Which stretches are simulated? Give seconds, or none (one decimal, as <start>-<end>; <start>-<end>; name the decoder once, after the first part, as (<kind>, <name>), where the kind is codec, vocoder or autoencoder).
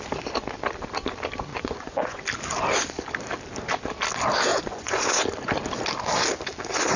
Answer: 1.5-2.2 (vocoder, Vocos); 4.5-5.1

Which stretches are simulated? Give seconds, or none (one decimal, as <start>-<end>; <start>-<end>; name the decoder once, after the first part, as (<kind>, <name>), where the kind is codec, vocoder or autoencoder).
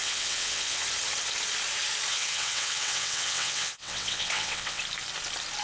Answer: 0.0-0.8 (vocoder, WaveNeXt); 2.1-4.8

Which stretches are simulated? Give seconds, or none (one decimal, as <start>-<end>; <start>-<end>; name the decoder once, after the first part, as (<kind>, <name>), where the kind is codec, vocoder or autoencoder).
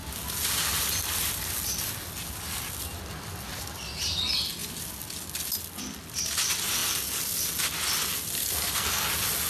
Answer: 8.4-9.1 (codec, SNAC)